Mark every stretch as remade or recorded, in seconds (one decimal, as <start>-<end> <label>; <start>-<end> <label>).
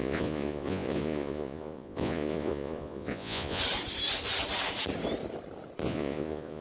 0.0-3.6 remade; 3.6-5.8 recorded; 5.8-6.6 remade